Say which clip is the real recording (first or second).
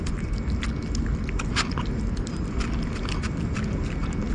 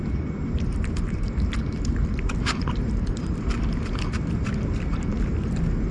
first